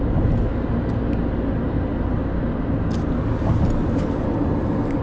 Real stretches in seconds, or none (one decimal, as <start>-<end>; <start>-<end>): 0.0-5.0

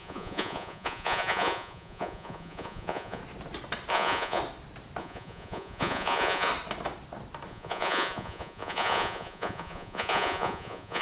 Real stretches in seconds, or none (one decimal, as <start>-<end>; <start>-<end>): 3.2-3.9; 4.4-5.0; 6.5-7.5

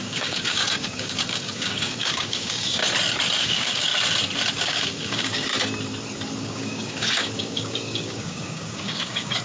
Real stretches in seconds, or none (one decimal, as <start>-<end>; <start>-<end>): 2.8-3.4; 3.9-4.5; 5.5-6.4